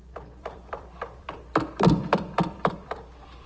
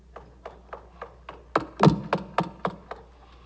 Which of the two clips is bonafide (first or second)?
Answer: second